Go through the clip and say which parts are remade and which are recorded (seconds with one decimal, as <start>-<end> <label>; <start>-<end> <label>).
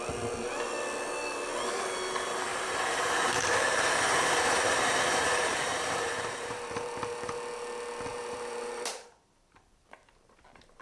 0.0-2.5 recorded; 2.5-7.3 remade; 7.3-8.1 recorded; 8.1-10.4 remade; 10.4-10.8 recorded